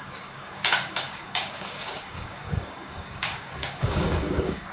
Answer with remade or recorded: remade